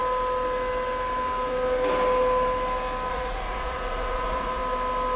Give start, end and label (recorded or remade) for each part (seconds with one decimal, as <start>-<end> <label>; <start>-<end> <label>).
0.0-3.1 recorded; 3.1-4.6 remade; 4.6-5.2 recorded